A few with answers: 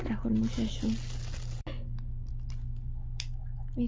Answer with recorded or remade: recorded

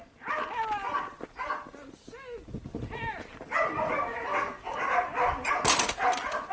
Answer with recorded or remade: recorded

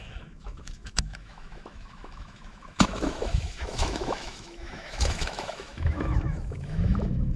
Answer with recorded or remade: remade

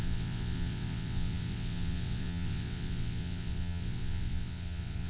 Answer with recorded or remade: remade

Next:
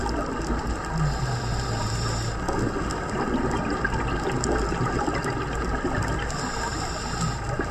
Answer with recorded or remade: recorded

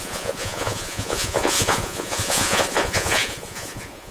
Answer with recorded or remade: remade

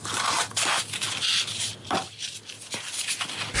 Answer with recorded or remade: recorded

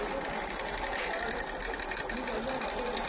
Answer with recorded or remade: recorded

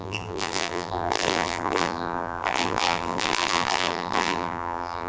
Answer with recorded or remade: remade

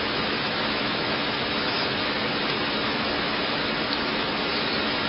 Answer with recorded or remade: remade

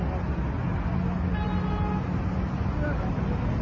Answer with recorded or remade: recorded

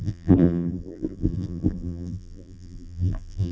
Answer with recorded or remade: remade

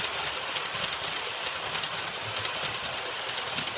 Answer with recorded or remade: remade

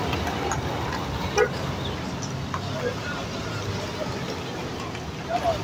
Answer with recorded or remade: recorded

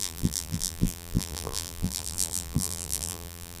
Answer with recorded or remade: remade